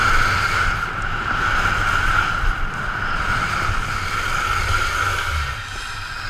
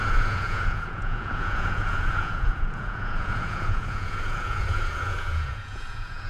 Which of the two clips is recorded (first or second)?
first